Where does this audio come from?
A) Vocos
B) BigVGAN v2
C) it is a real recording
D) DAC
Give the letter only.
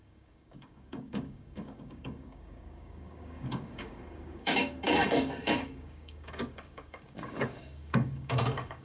D